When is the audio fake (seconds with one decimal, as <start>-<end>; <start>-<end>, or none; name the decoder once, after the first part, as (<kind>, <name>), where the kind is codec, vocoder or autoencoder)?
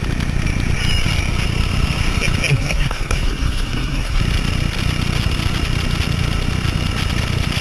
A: 2.5-4.2 (codec, SNAC)